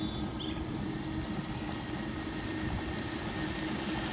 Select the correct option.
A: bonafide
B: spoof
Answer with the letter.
A